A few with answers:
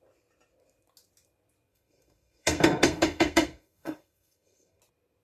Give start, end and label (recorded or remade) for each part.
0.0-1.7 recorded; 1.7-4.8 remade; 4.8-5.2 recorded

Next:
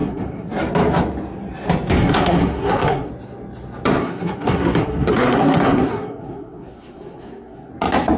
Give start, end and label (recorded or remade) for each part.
0.0-0.5 remade; 0.5-2.0 recorded; 2.0-3.1 remade; 3.1-4.0 recorded; 4.0-7.7 remade; 7.7-8.2 recorded

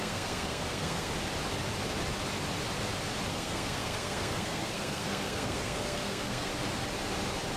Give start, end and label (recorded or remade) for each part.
0.0-1.1 remade; 1.1-3.3 recorded; 3.3-6.5 remade; 6.5-7.6 recorded

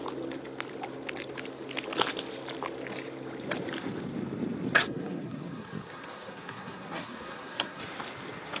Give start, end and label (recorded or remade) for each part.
0.0-4.8 recorded; 4.8-7.8 remade; 7.8-8.6 recorded